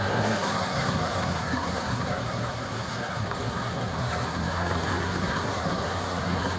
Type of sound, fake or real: fake